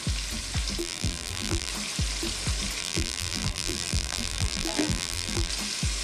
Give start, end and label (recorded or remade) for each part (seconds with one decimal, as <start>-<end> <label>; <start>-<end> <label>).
0.0-0.8 recorded; 0.8-1.7 remade; 1.7-2.8 recorded; 2.8-5.5 remade; 5.5-6.0 recorded